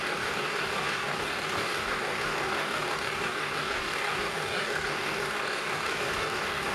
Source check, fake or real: fake